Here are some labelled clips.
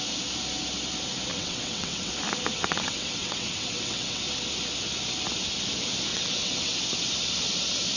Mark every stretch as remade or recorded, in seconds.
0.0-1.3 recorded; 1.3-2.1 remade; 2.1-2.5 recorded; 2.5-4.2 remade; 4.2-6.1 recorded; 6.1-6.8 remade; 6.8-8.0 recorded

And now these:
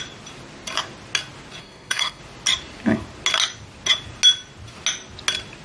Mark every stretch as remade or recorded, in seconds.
0.0-1.6 recorded; 1.6-2.2 remade; 2.2-5.6 recorded

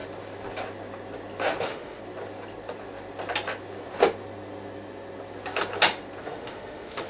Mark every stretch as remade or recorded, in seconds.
0.0-1.6 recorded; 1.6-2.0 remade; 2.0-6.2 recorded; 6.2-7.1 remade